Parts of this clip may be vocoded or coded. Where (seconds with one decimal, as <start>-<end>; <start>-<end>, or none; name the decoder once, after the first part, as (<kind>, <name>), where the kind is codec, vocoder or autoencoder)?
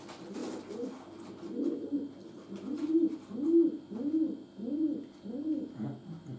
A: none